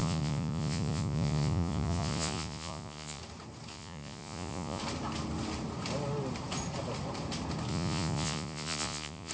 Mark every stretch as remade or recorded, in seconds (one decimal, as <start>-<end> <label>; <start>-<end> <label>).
0.0-3.2 remade; 3.2-3.7 recorded; 3.7-4.8 remade; 4.8-7.7 recorded; 7.7-9.3 remade